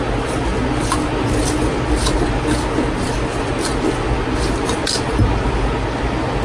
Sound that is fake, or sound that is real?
real